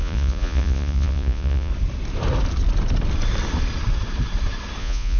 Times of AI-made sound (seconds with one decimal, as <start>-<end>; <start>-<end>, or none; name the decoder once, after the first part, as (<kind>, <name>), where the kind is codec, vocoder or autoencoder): 0.0-1.7 (vocoder, Vocos); 4.8-5.2